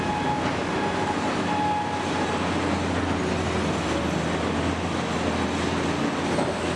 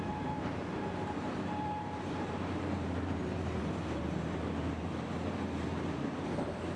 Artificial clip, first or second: second